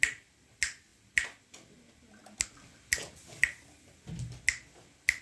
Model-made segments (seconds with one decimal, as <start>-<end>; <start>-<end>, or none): none